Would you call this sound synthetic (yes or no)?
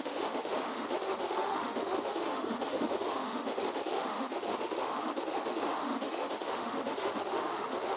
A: yes